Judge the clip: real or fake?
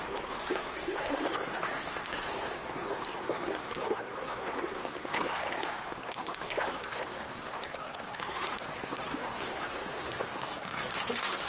fake